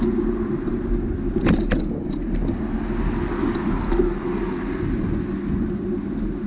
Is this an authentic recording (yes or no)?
yes